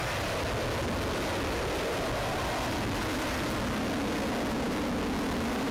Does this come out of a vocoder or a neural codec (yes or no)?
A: no